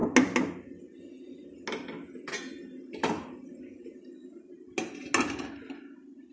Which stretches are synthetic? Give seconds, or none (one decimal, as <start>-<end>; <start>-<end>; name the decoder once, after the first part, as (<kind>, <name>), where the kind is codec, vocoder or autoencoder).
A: none